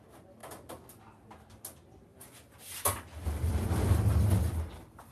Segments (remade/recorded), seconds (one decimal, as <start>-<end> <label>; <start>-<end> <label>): 0.0-2.1 recorded; 2.1-5.1 remade